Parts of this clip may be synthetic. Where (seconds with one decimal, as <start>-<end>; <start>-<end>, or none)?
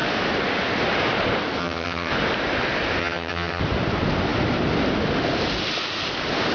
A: 1.6-2.1; 3.0-3.6